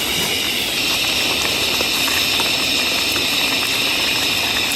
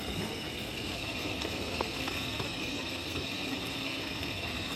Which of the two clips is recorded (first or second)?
first